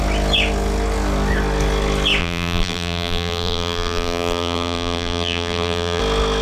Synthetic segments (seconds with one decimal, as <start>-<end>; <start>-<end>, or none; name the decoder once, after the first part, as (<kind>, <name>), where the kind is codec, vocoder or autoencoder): 2.2-6.0 (vocoder, BigVGAN v2)